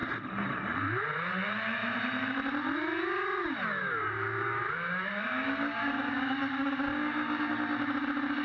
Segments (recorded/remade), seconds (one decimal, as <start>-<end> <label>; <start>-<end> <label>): 0.0-3.8 recorded; 3.8-7.5 remade; 7.5-8.4 recorded